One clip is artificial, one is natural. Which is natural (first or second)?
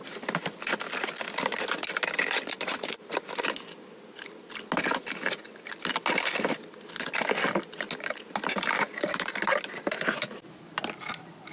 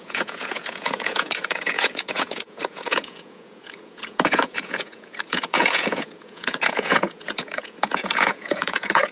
first